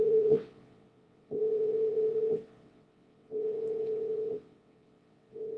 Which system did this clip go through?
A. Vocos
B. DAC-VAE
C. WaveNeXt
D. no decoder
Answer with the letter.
C